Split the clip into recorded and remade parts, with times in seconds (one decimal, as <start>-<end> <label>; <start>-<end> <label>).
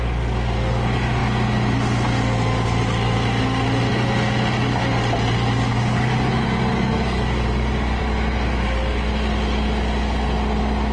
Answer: 0.0-5.7 recorded; 5.7-6.3 remade; 6.3-6.7 recorded; 6.7-8.0 remade; 8.0-10.9 recorded